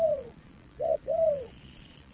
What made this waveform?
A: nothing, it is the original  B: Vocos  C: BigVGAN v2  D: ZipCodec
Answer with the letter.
B